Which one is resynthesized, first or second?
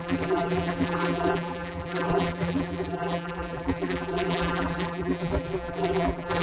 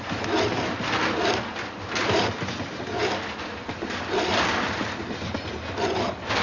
first